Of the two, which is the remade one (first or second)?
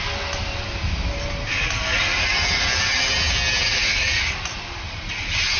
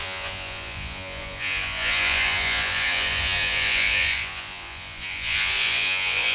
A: second